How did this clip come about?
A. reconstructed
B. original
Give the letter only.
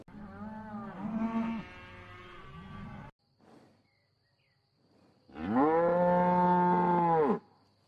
B